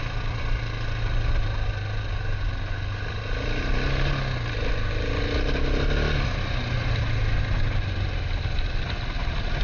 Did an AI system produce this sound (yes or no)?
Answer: no